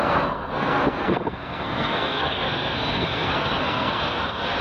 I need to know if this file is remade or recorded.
remade